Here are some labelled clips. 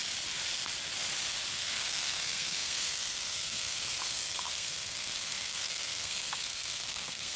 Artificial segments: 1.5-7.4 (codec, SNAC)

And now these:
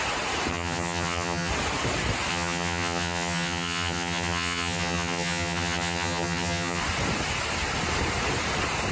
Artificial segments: 0.5-1.5 (vocoder, HiFi-GAN); 2.3-6.8

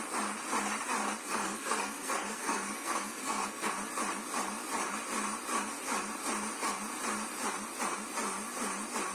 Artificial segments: 1.2-3.7 (codec, SNAC)

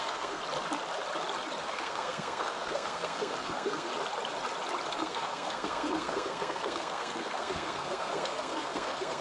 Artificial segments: 0.0-0.4 (codec, SNAC); 1.6-3.9; 4.9-9.2

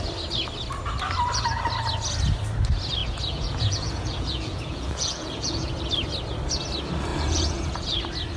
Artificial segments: 3.0-5.7 (vocoder, Vocos); 7.1-8.0